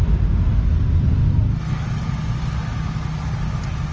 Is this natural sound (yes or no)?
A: yes